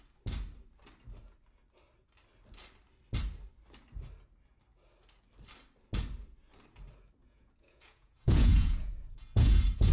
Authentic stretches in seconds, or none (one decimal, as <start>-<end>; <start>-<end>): 0.0-7.2